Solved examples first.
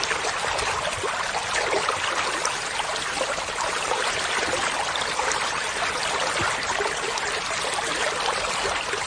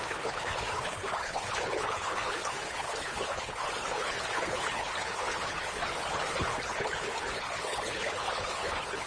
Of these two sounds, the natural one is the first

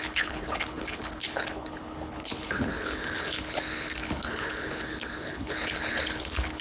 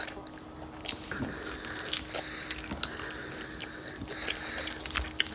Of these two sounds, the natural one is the second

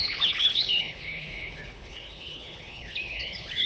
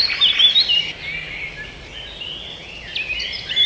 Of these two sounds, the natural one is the second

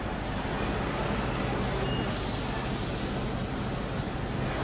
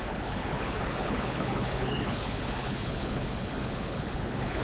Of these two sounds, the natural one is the first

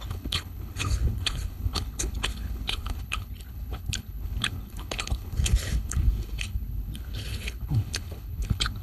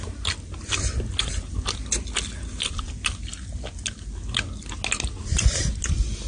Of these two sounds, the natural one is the second